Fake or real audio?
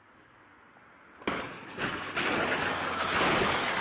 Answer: real